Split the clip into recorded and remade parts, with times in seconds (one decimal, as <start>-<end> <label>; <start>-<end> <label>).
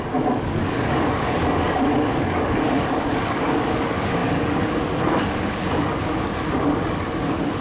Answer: 0.0-7.6 remade